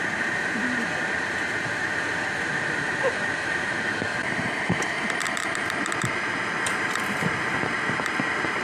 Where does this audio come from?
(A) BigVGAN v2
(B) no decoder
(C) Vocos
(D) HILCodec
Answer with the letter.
A